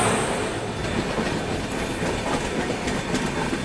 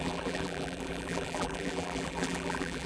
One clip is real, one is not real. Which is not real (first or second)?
second